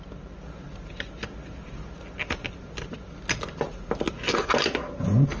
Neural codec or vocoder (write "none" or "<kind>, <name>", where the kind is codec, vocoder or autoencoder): none